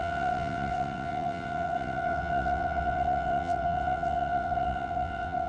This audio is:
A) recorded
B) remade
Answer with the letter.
B